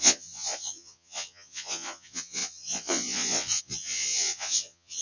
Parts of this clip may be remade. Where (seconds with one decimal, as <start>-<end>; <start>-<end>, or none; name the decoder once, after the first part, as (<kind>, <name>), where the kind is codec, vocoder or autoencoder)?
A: 0.0-5.0 (vocoder, Vocos)